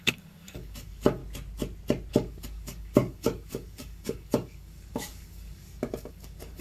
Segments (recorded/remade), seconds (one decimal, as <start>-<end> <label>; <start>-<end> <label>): 0.0-1.2 remade; 1.2-2.1 recorded; 2.1-6.6 remade